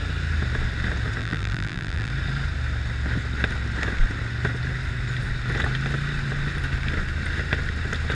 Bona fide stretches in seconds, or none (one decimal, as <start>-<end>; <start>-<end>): 0.0-1.2; 2.1-8.1